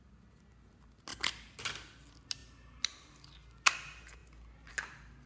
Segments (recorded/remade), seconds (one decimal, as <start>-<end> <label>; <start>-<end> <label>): 0.0-5.3 recorded